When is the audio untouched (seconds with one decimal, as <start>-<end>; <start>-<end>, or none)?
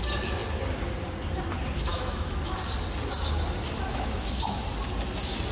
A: 0.0-1.9; 2.6-3.9; 4.6-5.5